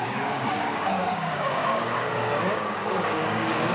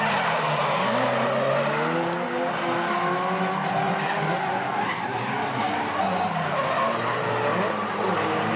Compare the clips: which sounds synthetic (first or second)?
first